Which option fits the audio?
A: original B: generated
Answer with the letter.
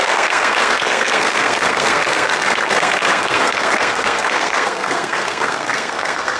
B